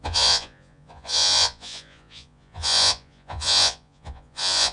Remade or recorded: remade